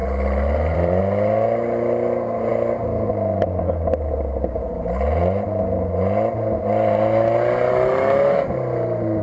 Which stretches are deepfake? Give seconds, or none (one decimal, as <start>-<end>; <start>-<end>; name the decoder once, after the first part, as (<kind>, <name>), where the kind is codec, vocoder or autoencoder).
0.0-1.0 (vocoder, BigVGAN v2)